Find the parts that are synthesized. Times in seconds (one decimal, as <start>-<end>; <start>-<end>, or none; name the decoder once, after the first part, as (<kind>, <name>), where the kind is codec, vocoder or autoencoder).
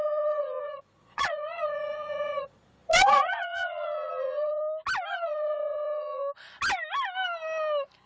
0.0-4.6 (vocoder, Vocos); 5.1-6.2